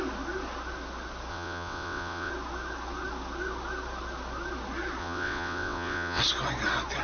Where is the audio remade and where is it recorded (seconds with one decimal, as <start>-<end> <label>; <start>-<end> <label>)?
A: 0.0-1.3 recorded; 1.3-2.3 remade; 2.3-5.0 recorded; 5.0-6.2 remade; 6.2-7.0 recorded